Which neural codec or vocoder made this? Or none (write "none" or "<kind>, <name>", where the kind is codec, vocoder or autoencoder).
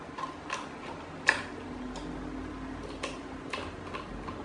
none